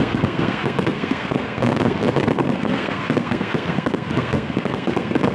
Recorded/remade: remade